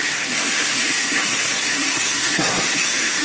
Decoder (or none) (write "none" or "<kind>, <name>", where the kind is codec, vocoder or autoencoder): codec, SNAC